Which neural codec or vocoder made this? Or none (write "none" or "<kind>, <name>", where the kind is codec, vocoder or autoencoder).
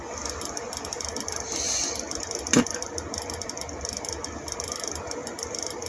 none